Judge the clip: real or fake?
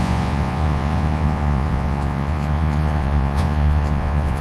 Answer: fake